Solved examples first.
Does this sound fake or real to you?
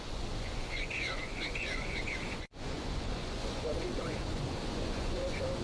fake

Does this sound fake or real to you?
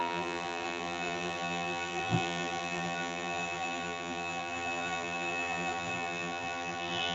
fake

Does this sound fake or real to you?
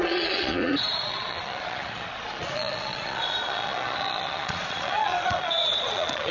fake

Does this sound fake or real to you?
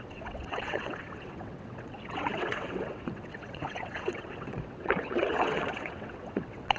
fake